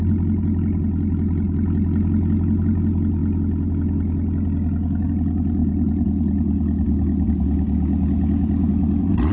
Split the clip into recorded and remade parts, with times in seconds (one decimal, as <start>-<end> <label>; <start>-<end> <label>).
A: 0.0-9.3 recorded